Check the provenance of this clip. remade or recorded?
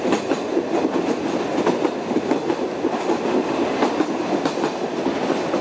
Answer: recorded